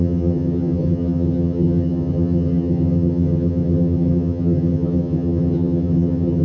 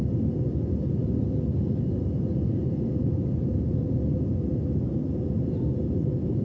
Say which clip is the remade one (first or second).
first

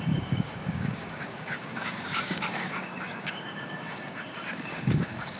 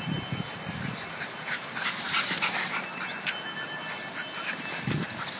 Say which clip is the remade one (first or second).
first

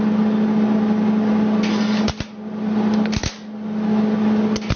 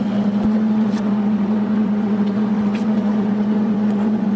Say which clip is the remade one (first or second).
second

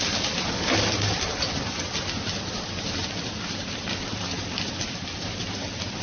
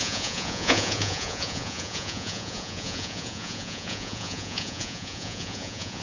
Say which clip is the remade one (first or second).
second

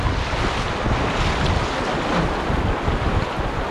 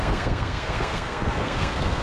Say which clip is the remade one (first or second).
second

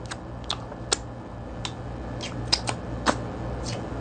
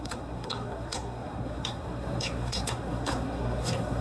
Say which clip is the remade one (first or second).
second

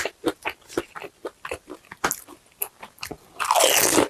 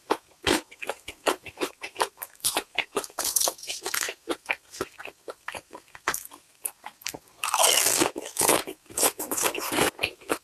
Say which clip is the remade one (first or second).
second